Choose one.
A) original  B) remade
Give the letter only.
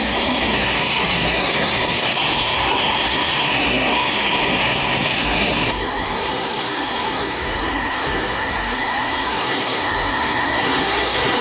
B